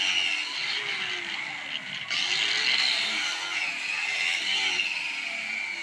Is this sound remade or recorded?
recorded